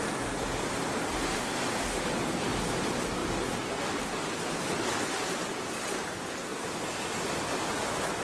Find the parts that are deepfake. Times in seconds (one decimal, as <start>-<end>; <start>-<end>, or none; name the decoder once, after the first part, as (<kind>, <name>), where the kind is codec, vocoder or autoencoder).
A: none

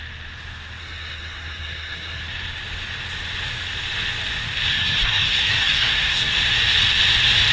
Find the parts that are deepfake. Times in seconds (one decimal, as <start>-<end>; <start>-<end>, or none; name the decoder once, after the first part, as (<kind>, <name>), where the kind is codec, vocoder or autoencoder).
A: 0.8-2.2 (codec, SNAC); 4.7-6.3